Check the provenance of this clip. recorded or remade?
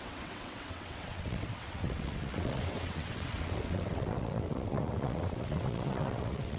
remade